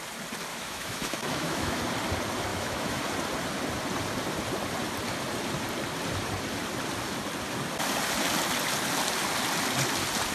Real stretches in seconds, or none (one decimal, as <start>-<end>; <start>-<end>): 0.0-0.5; 1.8-2.5; 3.0-10.3